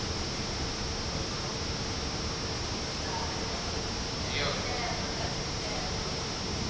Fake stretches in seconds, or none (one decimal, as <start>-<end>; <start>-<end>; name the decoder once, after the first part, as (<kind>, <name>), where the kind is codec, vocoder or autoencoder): none